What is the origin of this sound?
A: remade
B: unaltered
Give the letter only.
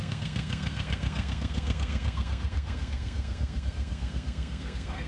A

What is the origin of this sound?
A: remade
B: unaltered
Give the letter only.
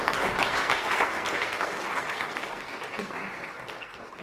A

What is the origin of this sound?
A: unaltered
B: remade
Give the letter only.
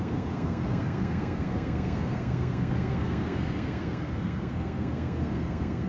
B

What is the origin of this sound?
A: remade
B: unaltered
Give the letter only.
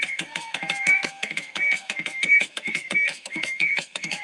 A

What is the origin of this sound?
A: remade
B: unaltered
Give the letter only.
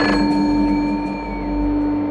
B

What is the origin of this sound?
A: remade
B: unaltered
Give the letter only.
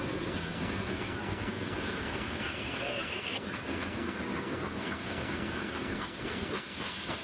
A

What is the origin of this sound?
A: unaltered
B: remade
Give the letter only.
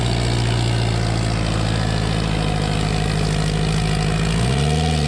A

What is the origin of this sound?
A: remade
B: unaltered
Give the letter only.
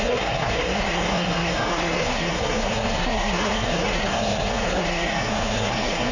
A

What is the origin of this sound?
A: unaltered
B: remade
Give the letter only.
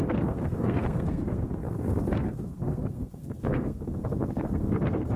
B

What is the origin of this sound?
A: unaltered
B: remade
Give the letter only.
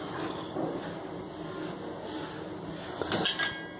A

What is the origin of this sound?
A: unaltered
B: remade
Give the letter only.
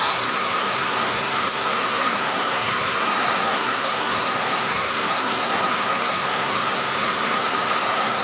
B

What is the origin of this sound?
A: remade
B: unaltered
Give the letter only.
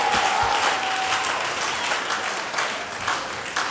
B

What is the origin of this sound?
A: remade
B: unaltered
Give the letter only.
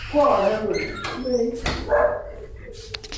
B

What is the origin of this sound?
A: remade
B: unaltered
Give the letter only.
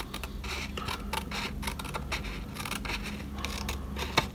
B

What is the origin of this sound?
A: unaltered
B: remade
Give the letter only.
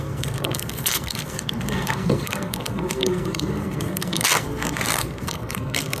B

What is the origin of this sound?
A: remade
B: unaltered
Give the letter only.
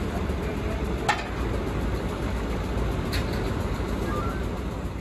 B